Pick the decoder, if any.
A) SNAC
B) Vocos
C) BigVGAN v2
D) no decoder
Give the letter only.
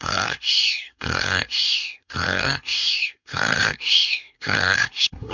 A